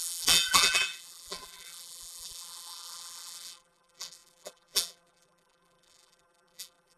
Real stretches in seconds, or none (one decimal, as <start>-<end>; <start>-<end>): none